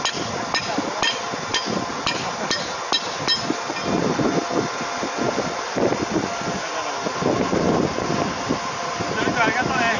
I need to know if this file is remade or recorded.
recorded